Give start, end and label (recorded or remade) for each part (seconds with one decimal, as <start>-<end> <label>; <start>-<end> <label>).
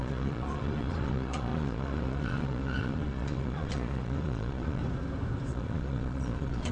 0.0-4.8 remade; 4.8-5.5 recorded; 5.5-6.7 remade